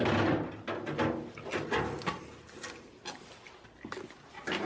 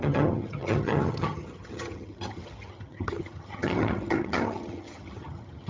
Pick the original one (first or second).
first